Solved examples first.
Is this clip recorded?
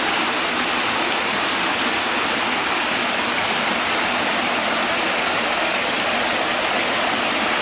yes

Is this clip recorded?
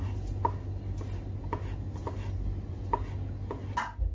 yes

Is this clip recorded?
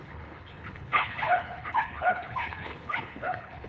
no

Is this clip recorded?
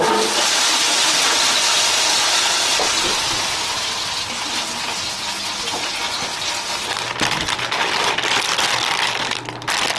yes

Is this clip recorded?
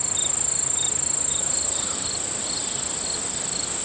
yes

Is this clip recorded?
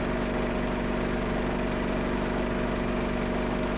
yes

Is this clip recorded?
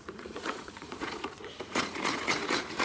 no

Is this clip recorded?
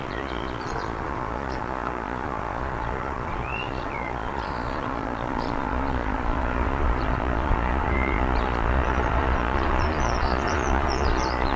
no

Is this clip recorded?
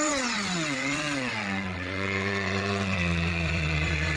no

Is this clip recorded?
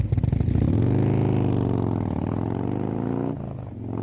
yes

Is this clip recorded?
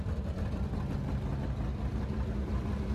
yes